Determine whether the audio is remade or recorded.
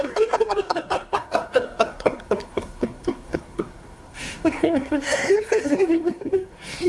remade